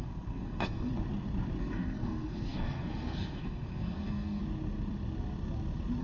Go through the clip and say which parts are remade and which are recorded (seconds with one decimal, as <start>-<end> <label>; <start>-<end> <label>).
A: 0.0-0.9 remade; 0.9-1.6 recorded; 1.6-4.4 remade; 4.4-6.0 recorded